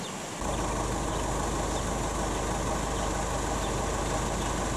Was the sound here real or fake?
real